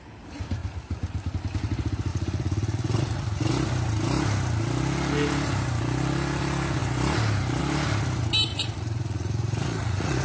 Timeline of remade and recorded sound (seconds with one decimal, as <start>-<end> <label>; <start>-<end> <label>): 0.0-2.1 recorded; 2.1-3.5 remade; 3.5-8.5 recorded; 8.5-10.2 remade